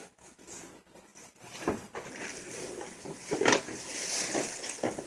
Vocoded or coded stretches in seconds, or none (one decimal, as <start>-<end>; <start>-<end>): none